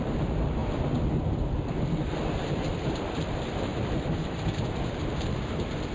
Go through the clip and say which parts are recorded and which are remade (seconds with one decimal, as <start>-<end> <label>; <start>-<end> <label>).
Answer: 0.0-0.6 remade; 0.6-2.4 recorded; 2.4-5.9 remade